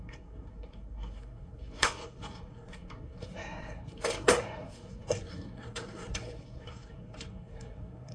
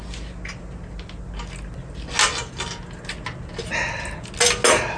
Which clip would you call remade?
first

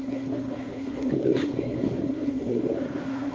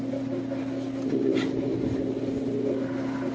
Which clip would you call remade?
first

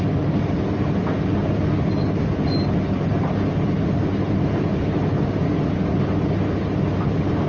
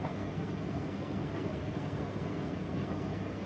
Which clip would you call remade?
second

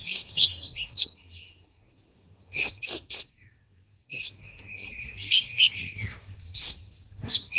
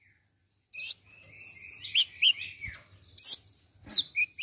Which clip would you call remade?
first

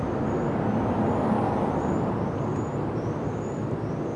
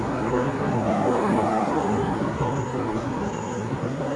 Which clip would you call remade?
second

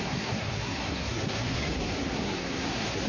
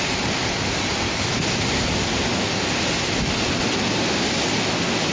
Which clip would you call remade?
first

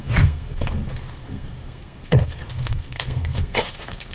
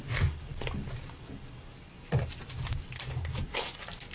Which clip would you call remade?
first